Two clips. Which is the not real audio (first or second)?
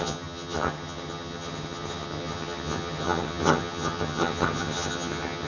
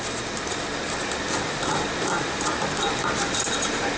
first